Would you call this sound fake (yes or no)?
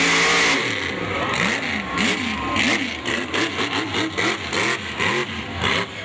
no